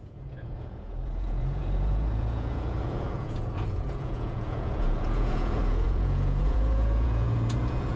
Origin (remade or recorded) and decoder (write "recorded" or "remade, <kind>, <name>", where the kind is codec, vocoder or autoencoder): remade, vocoder, Vocos